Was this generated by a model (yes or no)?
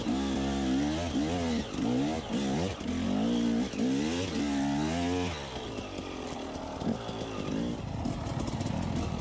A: no